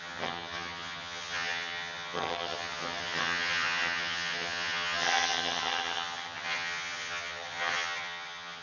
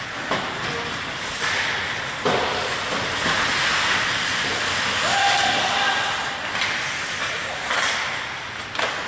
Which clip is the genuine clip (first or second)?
second